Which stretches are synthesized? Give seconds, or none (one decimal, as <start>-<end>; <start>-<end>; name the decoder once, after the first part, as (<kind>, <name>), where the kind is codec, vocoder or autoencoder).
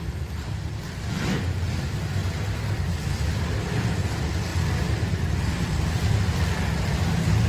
2.2-3.4 (vocoder, BigVGAN v2)